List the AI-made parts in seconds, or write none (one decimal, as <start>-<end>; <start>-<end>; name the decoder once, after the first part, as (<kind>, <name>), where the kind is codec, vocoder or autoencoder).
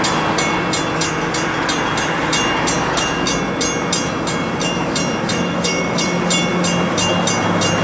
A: 5.3-6.0 (autoencoder, DAC-VAE)